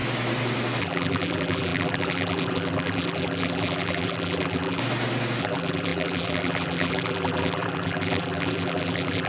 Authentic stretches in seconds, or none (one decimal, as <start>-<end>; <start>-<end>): 0.0-0.8; 4.8-5.4